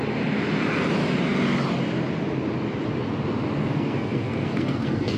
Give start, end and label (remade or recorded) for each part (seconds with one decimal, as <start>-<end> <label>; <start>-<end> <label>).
0.0-3.6 recorded; 3.6-5.2 remade